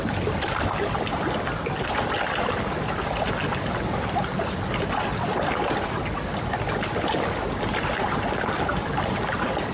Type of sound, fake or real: real